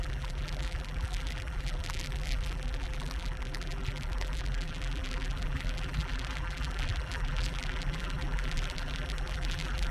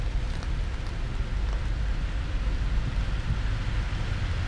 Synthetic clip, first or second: first